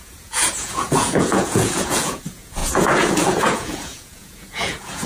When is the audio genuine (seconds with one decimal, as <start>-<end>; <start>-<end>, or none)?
none

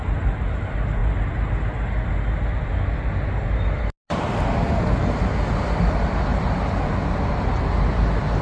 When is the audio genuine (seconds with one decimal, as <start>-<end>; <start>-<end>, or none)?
0.0-8.4

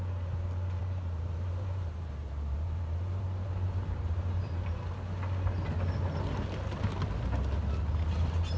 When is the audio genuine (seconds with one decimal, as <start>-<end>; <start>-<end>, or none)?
0.0-0.8; 4.8-8.6

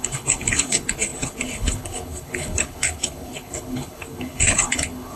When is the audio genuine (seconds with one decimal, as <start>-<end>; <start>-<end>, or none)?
none

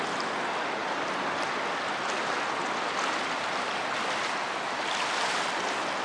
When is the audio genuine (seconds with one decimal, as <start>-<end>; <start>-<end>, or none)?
0.0-6.0